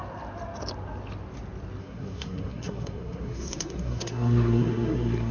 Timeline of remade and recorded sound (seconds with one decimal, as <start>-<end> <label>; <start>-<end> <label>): 0.0-1.8 recorded; 1.8-5.3 remade